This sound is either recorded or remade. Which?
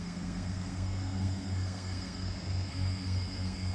remade